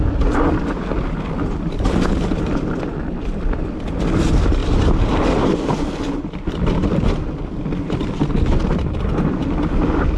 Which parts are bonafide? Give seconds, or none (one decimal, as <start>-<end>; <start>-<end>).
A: 0.0-10.2